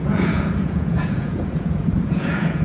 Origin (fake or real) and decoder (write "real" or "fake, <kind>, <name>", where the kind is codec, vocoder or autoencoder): fake, vocoder, Vocos